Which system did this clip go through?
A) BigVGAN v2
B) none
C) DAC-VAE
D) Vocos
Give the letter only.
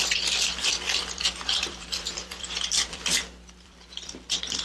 A